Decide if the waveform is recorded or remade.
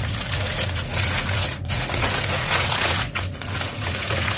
remade